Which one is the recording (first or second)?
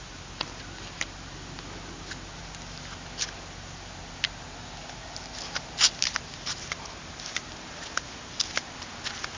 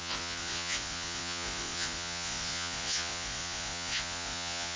first